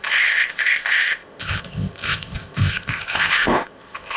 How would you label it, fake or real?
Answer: fake